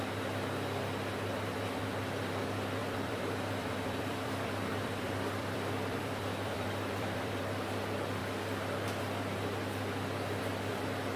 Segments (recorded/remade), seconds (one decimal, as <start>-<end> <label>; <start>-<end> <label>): 0.0-2.8 recorded; 2.8-7.4 remade; 7.4-11.2 recorded